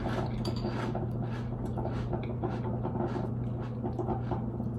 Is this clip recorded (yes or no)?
yes